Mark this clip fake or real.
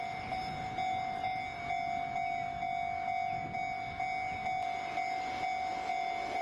real